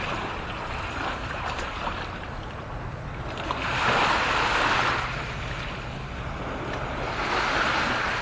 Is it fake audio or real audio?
real